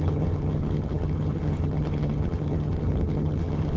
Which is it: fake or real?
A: fake